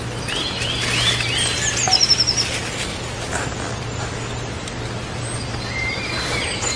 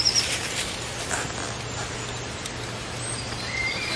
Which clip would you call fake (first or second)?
second